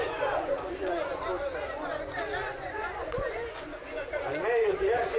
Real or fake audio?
fake